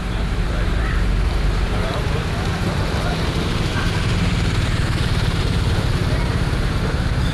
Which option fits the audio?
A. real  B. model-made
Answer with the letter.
B